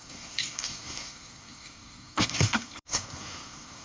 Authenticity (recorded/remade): remade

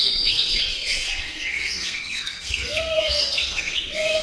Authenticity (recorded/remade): remade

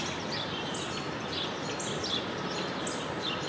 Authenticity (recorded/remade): recorded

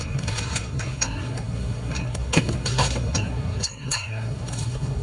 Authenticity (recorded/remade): remade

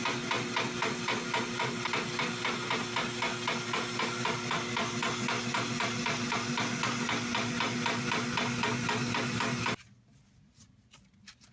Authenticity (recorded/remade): recorded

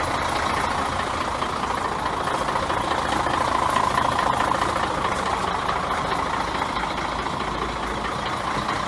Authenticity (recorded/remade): recorded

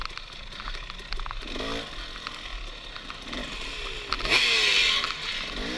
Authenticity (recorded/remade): recorded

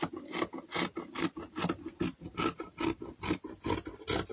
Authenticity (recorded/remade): recorded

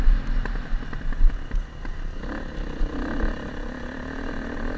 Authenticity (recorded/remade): recorded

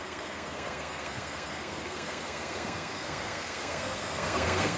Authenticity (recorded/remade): remade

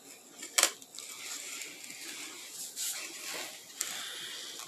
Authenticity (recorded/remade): recorded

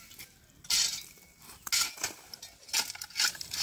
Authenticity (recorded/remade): recorded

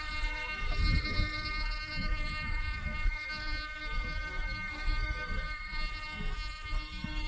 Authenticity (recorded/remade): remade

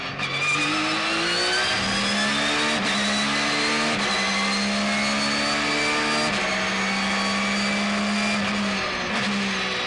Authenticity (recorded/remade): recorded